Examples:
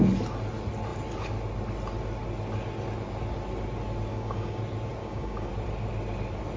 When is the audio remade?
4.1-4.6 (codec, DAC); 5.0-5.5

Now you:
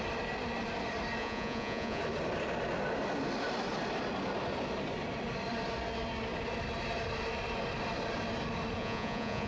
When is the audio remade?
1.2-2.0 (vocoder, Vocos); 8.8-9.5

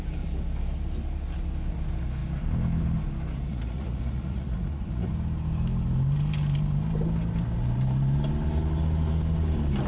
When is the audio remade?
3.5-5.1 (vocoder, Vocos)

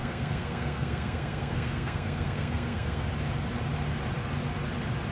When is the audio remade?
0.0-3.1 (codec, SNAC)

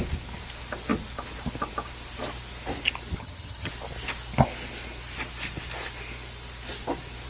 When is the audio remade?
3.2-3.7 (vocoder, HiFi-GAN)

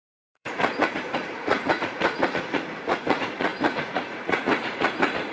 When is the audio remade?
0.0-5.3 (vocoder, Vocos)

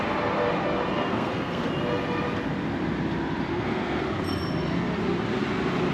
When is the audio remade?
1.1-1.7 (codec, SNAC); 3.5-4.0